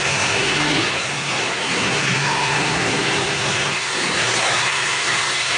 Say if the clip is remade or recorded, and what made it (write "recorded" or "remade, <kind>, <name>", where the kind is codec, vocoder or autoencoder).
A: remade, codec, SNAC